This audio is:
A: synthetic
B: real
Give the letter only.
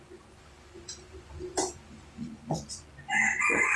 A